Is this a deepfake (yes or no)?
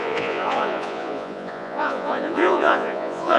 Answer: yes